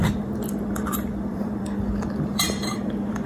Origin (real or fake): fake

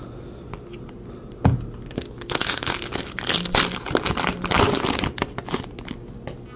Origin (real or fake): real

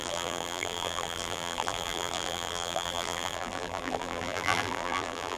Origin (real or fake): fake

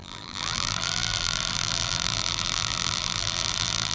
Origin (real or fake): fake